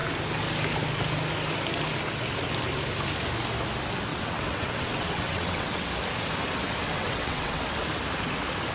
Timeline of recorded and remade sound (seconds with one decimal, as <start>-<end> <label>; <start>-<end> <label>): 0.0-4.1 recorded; 4.1-5.9 remade; 5.9-6.8 recorded; 6.8-7.6 remade; 7.6-8.7 recorded

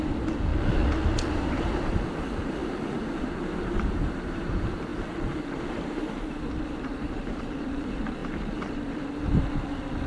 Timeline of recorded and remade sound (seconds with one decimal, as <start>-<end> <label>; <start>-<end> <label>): 0.0-0.5 remade; 0.5-1.3 recorded; 1.3-2.6 remade; 2.6-3.2 recorded; 3.2-10.1 remade

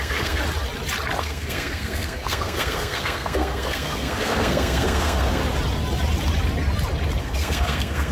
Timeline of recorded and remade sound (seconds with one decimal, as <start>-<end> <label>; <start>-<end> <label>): 0.0-0.4 remade; 0.4-1.2 recorded; 1.2-5.4 remade; 5.4-7.2 recorded; 7.2-8.1 remade